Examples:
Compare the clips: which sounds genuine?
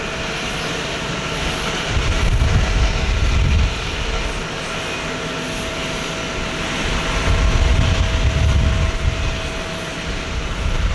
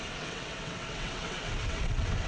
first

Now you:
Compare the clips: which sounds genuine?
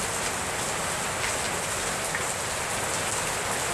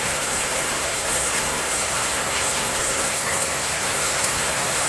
first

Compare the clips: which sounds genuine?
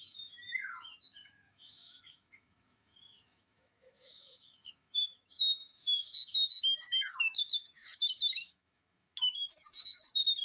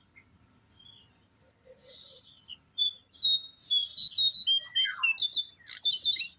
second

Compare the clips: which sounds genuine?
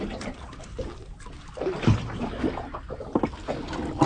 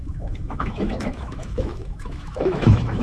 first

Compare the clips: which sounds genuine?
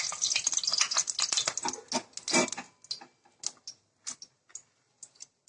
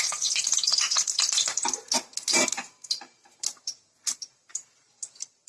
first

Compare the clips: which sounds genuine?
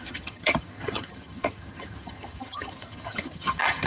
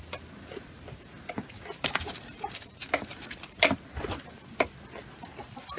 second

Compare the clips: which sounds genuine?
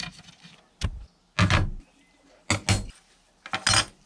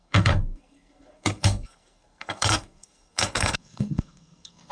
first